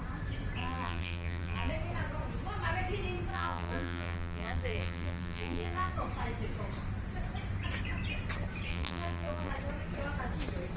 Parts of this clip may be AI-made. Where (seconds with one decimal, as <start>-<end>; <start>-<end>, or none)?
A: 0.6-1.7; 3.3-5.9; 8.7-9.5